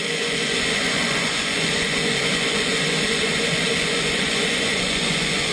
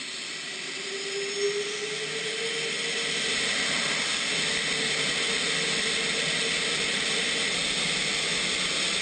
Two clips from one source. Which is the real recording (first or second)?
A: second